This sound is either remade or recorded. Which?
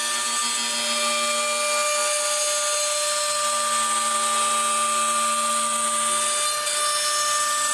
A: recorded